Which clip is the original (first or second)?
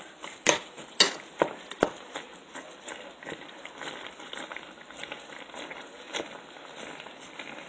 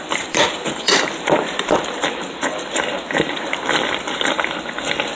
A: first